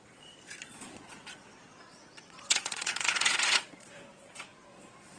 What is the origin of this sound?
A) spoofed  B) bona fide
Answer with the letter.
A